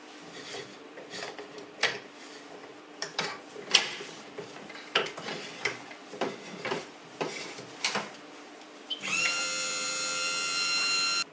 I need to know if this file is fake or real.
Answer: fake